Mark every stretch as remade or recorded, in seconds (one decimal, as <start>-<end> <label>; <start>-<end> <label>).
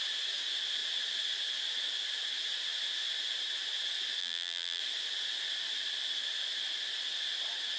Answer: 0.0-4.2 recorded; 4.2-4.8 remade; 4.8-7.8 recorded